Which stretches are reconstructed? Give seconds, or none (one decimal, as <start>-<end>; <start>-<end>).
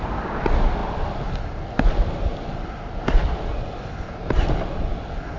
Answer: none